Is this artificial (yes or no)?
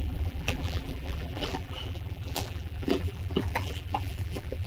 yes